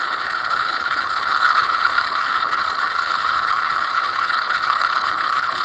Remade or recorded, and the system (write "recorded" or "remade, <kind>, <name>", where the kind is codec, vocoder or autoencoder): remade, codec, HILCodec